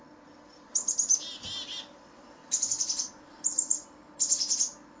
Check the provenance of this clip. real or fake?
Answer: real